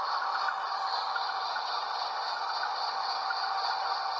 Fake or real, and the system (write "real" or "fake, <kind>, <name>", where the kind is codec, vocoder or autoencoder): real